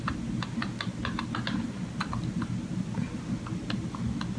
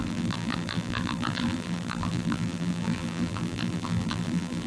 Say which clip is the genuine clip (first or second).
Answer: first